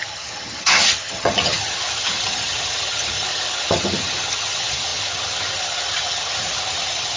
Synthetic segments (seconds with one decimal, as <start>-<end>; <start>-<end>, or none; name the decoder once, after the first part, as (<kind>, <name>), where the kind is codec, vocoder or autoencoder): 0.0-7.2 (vocoder, HiFi-GAN)